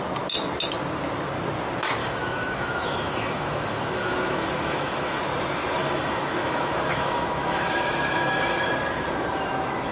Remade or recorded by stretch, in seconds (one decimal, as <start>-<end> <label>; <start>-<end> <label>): 0.0-2.0 recorded; 2.0-5.2 remade; 5.2-5.8 recorded; 5.8-8.7 remade; 8.7-9.9 recorded